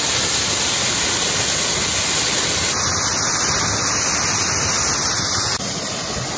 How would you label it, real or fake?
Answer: real